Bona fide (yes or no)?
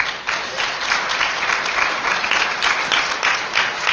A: yes